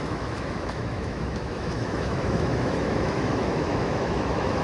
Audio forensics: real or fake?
fake